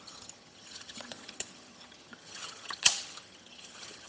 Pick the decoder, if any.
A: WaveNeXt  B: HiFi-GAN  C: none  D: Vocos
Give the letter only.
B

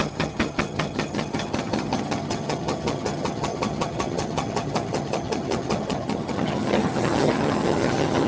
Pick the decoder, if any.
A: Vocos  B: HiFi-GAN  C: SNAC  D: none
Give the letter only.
B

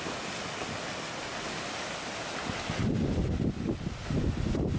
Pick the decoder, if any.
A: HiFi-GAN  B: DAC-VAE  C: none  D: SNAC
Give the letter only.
C